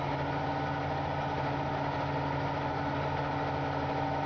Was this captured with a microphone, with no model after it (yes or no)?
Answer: yes